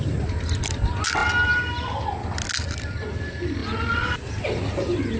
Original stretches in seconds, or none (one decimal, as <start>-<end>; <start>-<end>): 0.0-5.2